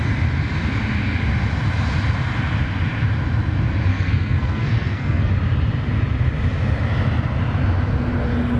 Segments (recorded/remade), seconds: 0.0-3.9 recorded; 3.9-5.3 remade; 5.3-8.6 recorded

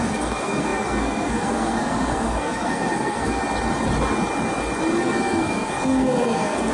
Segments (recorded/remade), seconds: 0.0-3.4 remade; 3.4-5.0 recorded; 5.0-6.7 remade

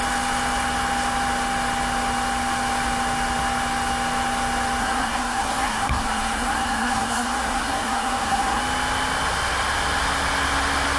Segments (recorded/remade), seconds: 0.0-4.8 recorded; 4.8-8.6 remade; 8.6-11.0 recorded

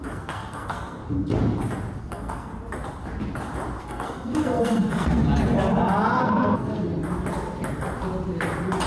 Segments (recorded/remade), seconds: 0.0-1.0 remade; 1.0-2.0 recorded; 2.0-2.5 remade; 2.5-3.8 recorded; 3.8-5.2 remade; 5.2-6.2 recorded; 6.2-6.9 remade; 6.9-8.9 recorded